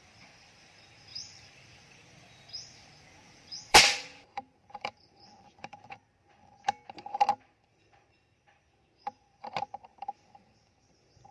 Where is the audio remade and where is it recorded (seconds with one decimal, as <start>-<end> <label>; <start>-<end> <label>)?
0.0-1.1 recorded; 1.1-5.9 remade; 5.9-11.3 recorded